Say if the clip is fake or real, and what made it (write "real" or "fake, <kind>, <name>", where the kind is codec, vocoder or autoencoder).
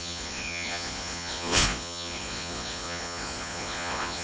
fake, vocoder, Vocos